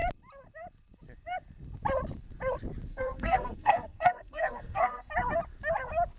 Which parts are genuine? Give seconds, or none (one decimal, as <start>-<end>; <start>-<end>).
0.0-2.9; 5.1-6.2

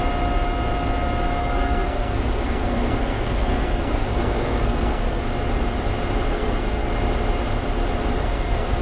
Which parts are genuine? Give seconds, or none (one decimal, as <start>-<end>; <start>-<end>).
0.0-1.4; 5.2-6.3; 6.9-8.2

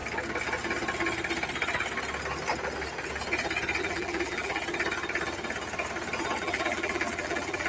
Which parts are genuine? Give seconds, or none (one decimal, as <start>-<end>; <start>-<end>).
0.0-3.8; 4.6-6.4

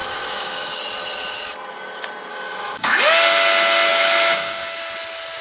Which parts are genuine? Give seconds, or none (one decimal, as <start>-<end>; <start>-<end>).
0.8-2.3; 3.0-3.9; 4.8-5.4

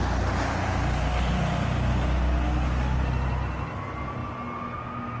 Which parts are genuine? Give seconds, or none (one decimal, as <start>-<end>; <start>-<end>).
0.0-5.2

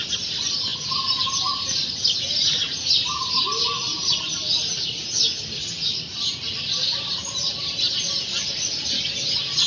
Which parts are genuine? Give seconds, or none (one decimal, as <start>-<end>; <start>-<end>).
0.0-9.7

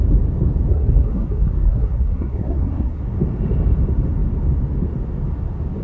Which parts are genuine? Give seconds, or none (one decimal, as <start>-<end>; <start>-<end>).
0.0-0.7; 3.0-5.8

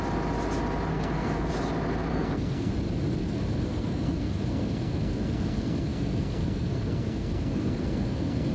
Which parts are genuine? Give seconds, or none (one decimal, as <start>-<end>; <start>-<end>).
0.0-0.9; 1.5-2.1; 2.7-3.2